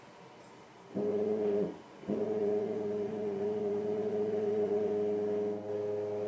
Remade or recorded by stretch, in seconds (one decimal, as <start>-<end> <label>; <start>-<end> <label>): 0.0-1.1 recorded; 1.1-4.9 remade; 4.9-6.3 recorded